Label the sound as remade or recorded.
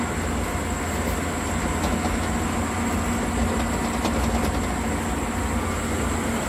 recorded